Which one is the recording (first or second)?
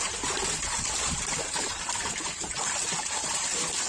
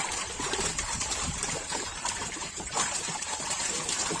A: first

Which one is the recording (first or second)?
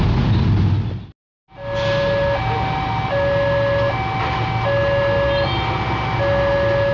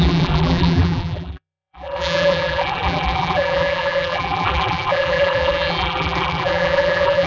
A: first